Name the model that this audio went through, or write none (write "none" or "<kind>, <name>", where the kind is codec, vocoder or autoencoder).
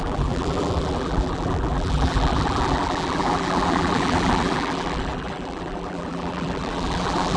vocoder, BigVGAN v2